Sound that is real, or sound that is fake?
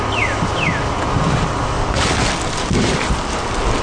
real